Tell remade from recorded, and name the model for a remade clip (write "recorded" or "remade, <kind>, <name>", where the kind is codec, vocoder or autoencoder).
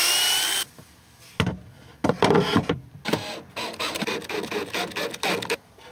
recorded